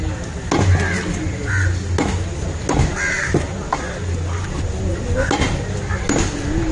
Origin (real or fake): real